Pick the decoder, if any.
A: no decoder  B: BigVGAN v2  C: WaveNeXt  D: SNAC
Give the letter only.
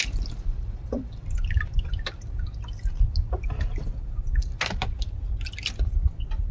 A